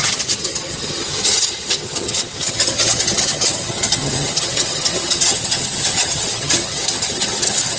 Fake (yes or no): yes